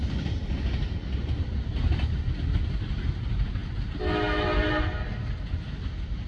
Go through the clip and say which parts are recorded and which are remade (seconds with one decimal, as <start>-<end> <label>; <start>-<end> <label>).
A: 0.0-6.3 recorded